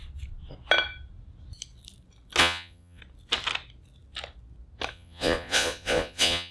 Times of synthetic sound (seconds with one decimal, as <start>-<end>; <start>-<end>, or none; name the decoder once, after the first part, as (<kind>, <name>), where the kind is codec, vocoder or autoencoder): 2.4-3.0 (vocoder, Vocos); 4.9-6.5